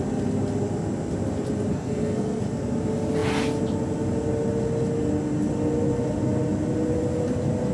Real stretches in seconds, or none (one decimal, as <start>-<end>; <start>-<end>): 0.0-1.7; 2.4-7.7